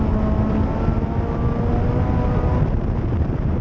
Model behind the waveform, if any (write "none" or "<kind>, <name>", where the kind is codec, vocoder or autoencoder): none